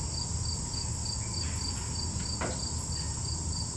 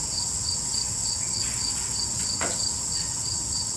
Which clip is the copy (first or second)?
second